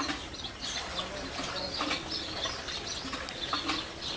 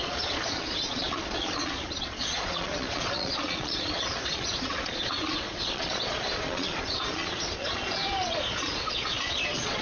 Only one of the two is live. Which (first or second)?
first